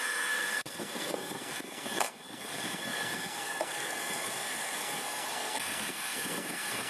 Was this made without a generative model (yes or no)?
no